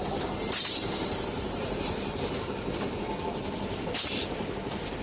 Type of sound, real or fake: real